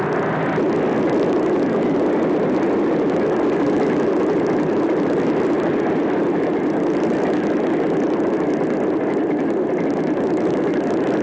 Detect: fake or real real